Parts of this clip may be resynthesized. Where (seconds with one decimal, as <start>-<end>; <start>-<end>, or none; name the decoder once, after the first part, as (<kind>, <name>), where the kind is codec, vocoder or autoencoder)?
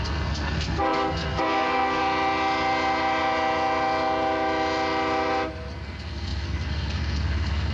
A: 0.0-2.0 (codec, SNAC); 5.7-7.7